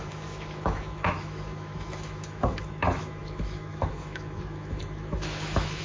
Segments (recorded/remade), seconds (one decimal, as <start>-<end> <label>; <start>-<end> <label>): 0.0-5.8 remade